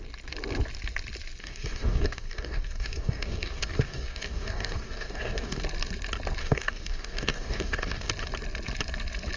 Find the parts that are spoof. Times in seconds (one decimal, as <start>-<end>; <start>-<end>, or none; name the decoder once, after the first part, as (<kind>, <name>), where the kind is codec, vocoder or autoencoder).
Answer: 1.4-5.6 (codec, DAC); 6.4-8.1